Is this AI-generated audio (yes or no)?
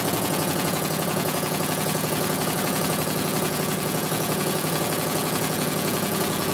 yes